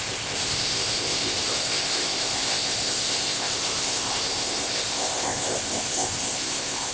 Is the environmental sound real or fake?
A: fake